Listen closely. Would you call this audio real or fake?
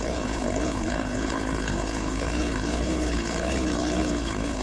fake